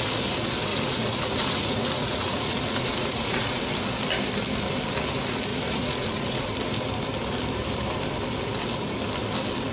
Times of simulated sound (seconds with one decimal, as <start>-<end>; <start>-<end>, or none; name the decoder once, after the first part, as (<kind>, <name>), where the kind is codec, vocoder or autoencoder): 0.7-3.6 (vocoder, Vocos); 5.5-6.5